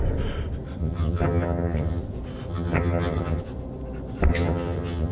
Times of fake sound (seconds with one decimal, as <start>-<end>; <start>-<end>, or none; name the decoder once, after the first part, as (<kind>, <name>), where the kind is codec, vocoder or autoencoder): 0.8-2.0 (vocoder, HiFi-GAN); 2.5-3.4; 4.3-5.1